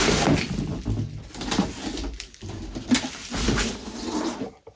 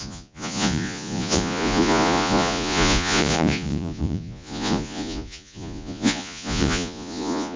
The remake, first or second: second